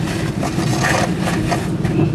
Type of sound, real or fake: real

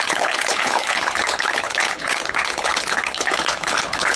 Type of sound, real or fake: fake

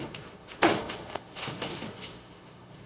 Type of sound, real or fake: fake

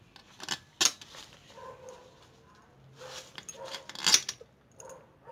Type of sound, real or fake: real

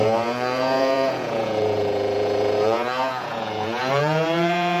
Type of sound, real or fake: fake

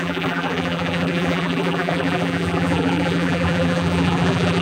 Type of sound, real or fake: fake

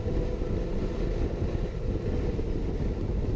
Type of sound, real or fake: real